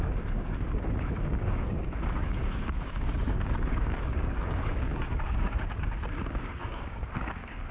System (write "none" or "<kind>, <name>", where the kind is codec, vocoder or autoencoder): codec, DAC